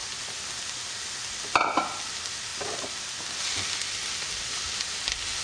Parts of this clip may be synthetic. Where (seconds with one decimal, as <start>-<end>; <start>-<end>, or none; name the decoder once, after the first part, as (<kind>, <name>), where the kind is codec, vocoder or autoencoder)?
2.5-3.0 (vocoder, BigVGAN v2)